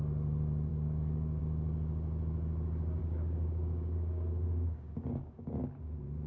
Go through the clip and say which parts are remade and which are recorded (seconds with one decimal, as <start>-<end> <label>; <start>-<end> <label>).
0.0-0.7 recorded; 0.7-1.4 remade; 1.4-3.0 recorded; 3.0-5.5 remade; 5.5-6.3 recorded